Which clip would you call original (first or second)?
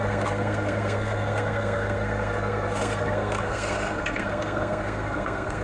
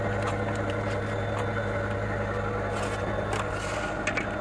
second